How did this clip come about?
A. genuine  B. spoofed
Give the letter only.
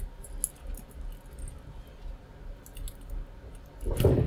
A